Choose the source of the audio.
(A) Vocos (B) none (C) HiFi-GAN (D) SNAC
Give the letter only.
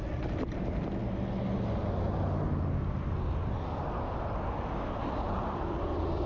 B